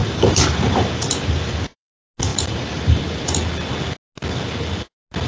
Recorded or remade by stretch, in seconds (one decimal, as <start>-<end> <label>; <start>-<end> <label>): 0.0-1.9 remade; 1.9-2.3 recorded; 2.3-3.2 remade; 3.2-5.3 recorded